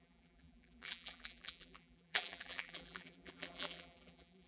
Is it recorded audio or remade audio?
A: remade